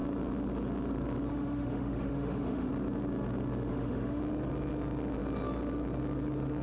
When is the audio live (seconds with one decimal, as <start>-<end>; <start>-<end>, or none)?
0.0-1.3; 2.7-3.7; 4.2-6.6